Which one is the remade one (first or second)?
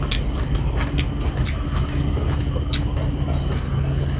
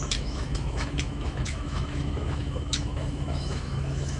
second